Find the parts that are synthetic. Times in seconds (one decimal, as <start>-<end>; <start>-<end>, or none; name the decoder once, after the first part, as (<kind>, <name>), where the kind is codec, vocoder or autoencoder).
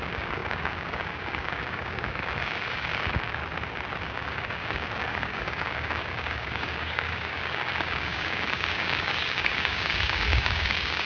0.0-3.4 (codec, DAC); 4.0-11.1